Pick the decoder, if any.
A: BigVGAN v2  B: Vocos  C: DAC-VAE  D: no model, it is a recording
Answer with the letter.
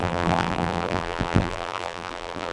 A